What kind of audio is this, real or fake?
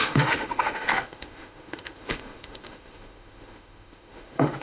fake